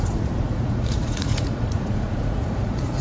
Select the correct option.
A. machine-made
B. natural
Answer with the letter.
A